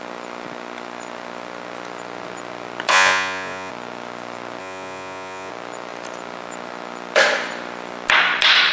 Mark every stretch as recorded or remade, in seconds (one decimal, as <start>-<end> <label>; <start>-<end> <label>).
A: 0.0-2.9 recorded; 2.9-3.7 remade; 3.7-4.6 recorded; 4.6-5.5 remade; 5.5-8.7 recorded